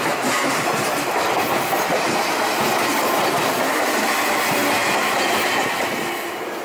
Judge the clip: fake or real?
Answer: real